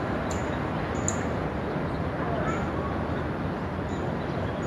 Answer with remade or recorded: recorded